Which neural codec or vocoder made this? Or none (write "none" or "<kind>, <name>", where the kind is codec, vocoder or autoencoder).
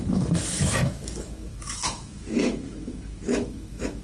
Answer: autoencoder, DAC-VAE